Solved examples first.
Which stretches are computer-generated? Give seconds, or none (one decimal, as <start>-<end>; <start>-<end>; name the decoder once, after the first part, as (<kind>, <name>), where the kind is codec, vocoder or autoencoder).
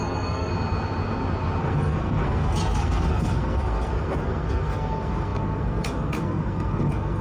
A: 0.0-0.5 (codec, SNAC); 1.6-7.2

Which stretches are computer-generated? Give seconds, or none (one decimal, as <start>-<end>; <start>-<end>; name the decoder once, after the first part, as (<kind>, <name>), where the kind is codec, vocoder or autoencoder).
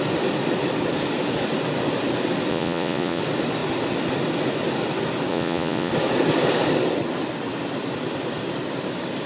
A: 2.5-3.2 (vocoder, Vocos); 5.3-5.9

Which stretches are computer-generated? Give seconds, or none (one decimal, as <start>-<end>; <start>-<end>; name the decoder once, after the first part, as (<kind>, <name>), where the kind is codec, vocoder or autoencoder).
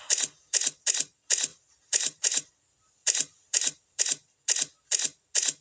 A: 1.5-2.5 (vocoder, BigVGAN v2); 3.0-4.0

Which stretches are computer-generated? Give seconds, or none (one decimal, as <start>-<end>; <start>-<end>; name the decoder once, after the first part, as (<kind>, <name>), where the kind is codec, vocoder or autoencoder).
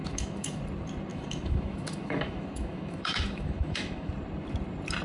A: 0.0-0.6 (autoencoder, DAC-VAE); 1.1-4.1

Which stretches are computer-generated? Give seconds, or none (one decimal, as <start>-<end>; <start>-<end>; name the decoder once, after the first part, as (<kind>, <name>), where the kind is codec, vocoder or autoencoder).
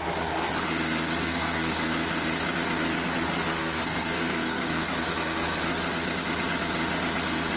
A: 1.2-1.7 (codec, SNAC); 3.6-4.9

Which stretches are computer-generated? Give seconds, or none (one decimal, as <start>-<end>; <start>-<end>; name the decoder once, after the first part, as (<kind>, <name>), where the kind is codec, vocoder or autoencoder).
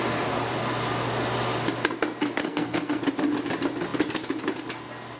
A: 2.4-3.0 (codec, SNAC)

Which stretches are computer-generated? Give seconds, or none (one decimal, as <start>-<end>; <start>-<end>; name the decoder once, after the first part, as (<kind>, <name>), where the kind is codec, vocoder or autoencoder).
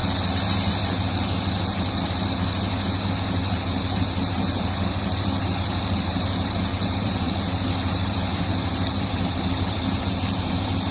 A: 6.7-10.0 (vocoder, BigVGAN v2)